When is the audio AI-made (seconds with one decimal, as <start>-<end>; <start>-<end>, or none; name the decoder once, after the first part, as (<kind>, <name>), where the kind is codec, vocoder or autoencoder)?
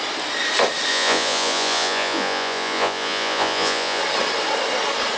0.9-4.0 (vocoder, Vocos)